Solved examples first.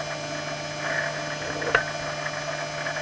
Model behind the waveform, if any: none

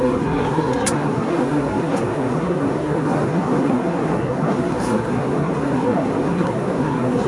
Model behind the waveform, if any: codec, SNAC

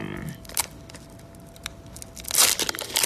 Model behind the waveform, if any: none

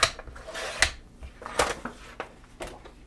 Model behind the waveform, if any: none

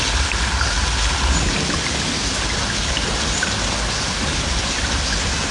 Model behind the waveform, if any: none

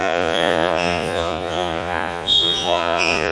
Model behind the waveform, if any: vocoder, Vocos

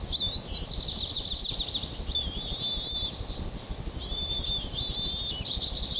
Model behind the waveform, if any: none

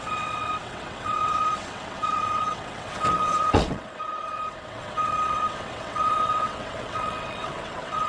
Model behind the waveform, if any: vocoder, WaveNeXt